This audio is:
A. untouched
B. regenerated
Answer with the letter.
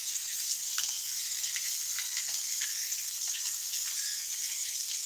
B